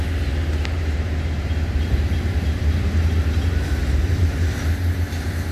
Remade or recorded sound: remade